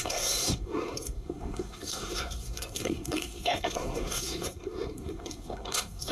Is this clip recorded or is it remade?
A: remade